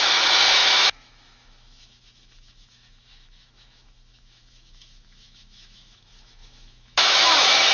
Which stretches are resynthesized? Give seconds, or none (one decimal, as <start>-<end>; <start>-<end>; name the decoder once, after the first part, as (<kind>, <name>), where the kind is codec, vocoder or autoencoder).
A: 0.0-7.7 (autoencoder, DAC-VAE)